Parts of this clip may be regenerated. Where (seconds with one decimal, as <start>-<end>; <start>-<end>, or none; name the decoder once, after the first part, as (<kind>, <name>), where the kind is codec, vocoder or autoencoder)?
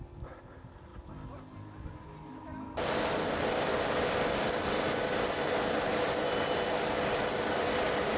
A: none